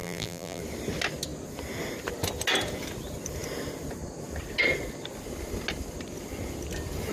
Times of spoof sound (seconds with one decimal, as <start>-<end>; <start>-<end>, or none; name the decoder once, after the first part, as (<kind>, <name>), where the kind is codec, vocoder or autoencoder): 0.0-0.6 (vocoder, BigVGAN v2)